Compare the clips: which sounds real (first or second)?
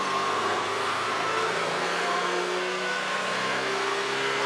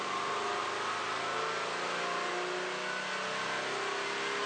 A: second